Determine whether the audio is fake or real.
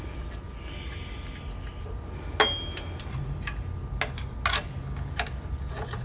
real